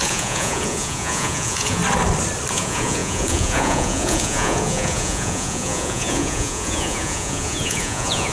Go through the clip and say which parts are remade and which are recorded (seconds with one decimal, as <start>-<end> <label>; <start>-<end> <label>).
0.0-1.8 remade; 1.8-2.5 recorded; 2.5-8.3 remade

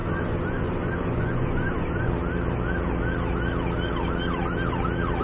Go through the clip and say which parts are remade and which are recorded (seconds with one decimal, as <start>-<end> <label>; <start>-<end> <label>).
0.0-2.1 remade; 2.1-5.2 recorded

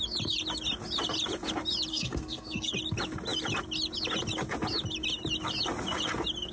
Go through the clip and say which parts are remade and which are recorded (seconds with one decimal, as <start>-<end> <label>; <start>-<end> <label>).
0.0-1.9 recorded; 1.9-2.7 remade; 2.7-6.5 recorded

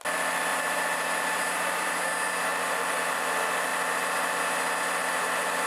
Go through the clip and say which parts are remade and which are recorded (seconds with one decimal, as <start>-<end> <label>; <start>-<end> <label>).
0.0-0.5 recorded; 0.5-2.1 remade; 2.1-5.7 recorded

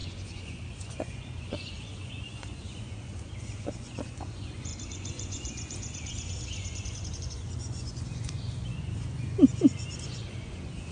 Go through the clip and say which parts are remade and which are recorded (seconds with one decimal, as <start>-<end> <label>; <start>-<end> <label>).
0.0-10.9 remade